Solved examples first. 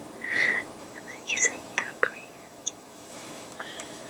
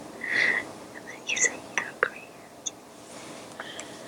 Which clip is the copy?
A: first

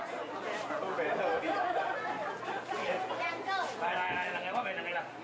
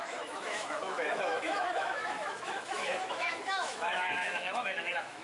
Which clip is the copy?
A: second